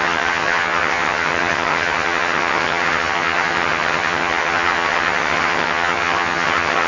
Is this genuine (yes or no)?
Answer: no